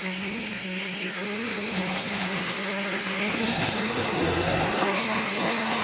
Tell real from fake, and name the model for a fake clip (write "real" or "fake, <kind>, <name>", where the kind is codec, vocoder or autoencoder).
fake, codec, SNAC